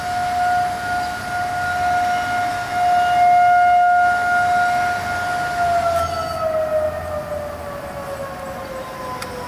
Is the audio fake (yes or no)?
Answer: no